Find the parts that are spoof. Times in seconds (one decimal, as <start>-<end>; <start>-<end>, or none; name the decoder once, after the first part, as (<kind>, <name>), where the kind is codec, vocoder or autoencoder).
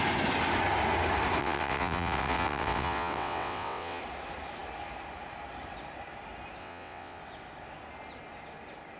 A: 1.4-4.0 (vocoder, WaveNeXt); 6.6-7.2